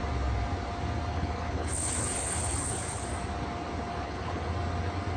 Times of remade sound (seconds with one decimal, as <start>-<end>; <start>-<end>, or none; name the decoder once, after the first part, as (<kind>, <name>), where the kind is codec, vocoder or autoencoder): 1.1-3.1 (codec, HILCodec); 3.9-4.5